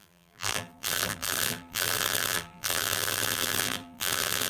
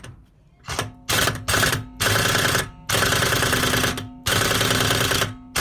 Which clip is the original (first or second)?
second